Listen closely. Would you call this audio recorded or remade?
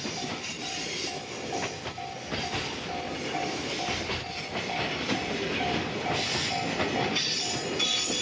recorded